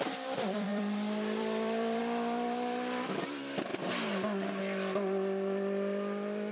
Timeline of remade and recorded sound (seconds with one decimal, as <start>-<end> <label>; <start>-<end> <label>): 0.0-3.7 remade; 3.7-4.6 recorded; 4.6-6.5 remade